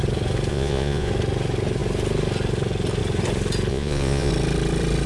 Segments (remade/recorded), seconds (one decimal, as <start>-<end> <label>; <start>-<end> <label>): 0.0-0.5 recorded; 0.5-1.1 remade; 1.1-3.7 recorded; 3.7-4.3 remade; 4.3-5.1 recorded